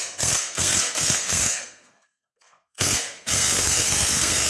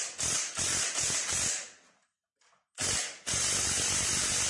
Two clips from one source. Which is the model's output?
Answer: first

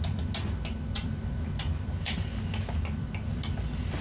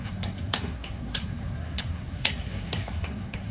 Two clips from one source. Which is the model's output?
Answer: second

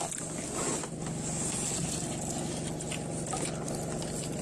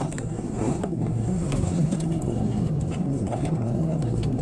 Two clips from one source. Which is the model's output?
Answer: second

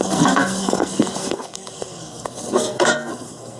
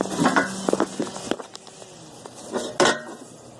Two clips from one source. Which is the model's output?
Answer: first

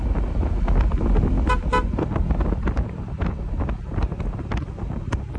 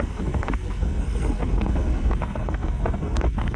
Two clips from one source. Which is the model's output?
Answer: second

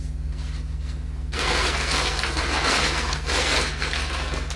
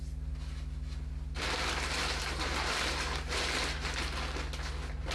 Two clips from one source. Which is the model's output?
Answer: first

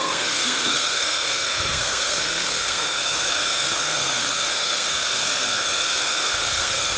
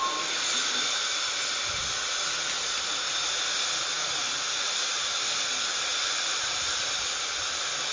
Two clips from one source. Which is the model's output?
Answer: first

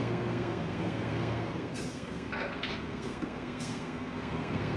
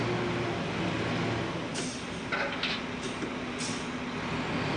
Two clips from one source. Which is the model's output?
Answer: first